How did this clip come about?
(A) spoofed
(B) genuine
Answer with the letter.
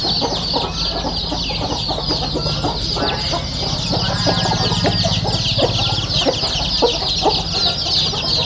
B